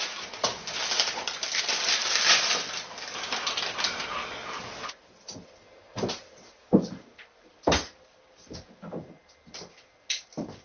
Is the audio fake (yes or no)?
no